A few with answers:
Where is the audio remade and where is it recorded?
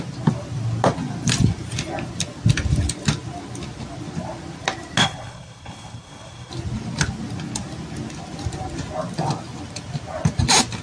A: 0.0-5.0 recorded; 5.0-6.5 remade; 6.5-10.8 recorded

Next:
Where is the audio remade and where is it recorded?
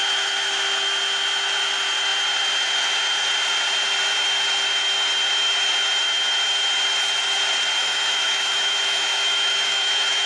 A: 0.0-7.8 recorded; 7.8-10.3 remade